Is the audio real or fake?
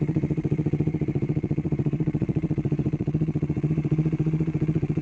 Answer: fake